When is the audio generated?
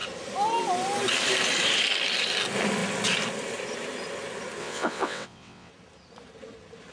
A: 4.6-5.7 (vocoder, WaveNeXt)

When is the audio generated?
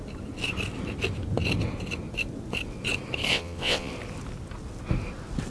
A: 3.3-3.9 (vocoder, WaveNeXt)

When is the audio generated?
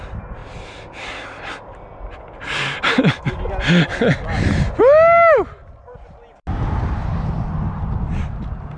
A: none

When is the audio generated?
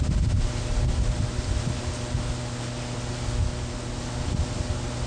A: none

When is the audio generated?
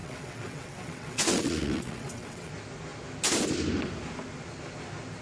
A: 0.0-2.5 (vocoder, WaveNeXt)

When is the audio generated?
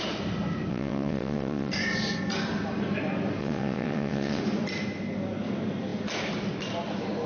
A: 0.7-1.7 (vocoder, WaveNeXt); 3.4-4.4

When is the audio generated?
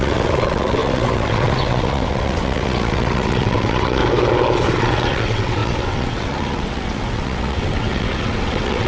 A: 0.0-4.0 (vocoder, WaveNeXt); 4.8-8.9